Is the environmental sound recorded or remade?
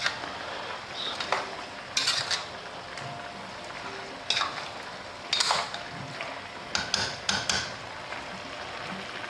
recorded